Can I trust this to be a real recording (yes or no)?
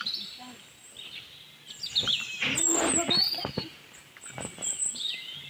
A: yes